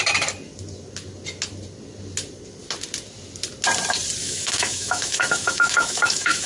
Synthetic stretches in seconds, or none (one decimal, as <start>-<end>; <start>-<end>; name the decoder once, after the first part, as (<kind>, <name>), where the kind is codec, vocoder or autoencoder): 4.2-6.5 (autoencoder, DAC-VAE)